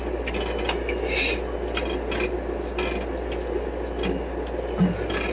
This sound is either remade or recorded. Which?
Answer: recorded